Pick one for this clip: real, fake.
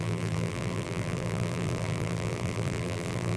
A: fake